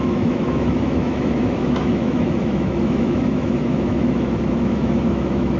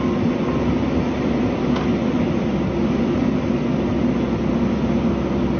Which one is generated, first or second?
first